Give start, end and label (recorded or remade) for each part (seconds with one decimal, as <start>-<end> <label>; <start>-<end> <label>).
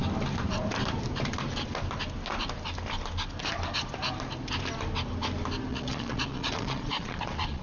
0.0-5.7 recorded; 5.7-7.6 remade